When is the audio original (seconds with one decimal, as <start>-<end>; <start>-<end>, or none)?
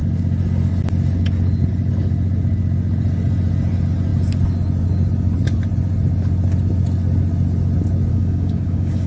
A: 0.0-8.1